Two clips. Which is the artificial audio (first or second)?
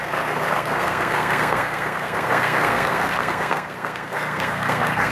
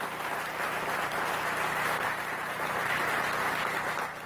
first